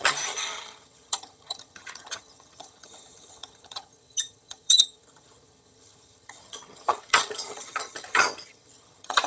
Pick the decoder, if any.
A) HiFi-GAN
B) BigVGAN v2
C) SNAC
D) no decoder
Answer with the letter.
A